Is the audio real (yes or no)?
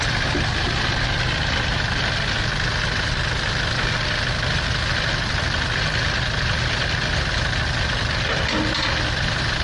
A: yes